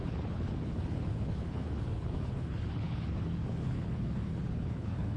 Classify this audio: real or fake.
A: fake